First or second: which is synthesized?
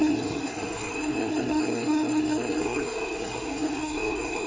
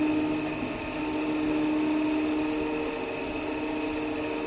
first